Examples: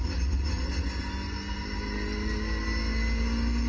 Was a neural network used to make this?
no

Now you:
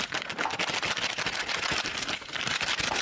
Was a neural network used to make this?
no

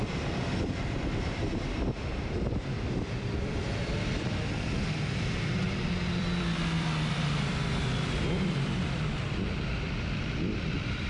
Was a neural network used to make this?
yes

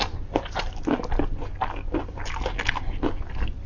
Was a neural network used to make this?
no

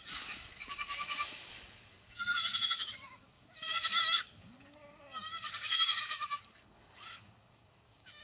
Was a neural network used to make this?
yes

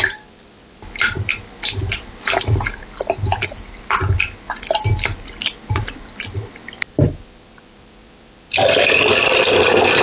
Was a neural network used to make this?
no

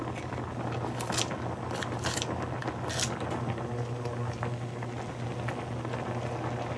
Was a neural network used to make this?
no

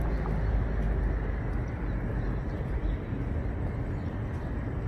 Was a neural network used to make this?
no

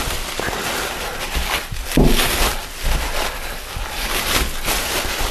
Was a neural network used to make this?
no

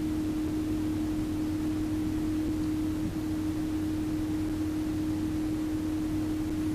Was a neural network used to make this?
no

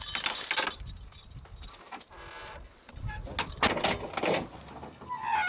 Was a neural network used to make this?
no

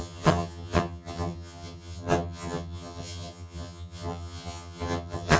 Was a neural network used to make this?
yes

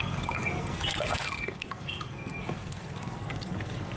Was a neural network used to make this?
yes